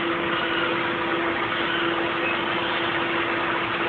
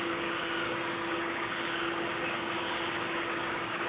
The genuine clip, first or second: first